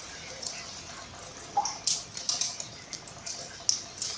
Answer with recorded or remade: recorded